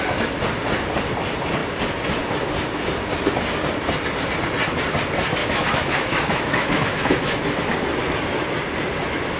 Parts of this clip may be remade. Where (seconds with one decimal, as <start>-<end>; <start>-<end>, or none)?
5.4-7.4